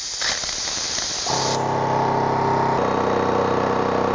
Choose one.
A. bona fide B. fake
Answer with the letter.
A